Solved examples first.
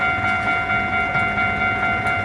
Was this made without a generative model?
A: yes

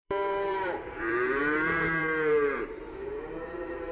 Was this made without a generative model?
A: no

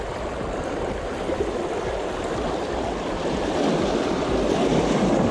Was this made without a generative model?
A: yes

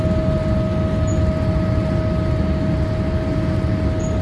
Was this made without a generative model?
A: yes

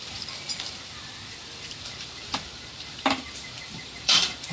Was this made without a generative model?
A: no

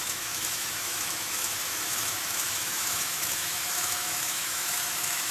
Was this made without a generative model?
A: no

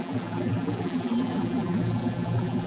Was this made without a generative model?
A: no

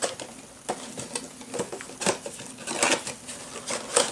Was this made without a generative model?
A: yes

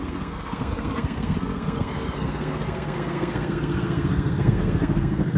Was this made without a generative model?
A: no